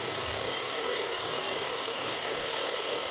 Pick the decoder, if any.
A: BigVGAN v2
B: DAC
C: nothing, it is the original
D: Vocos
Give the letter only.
B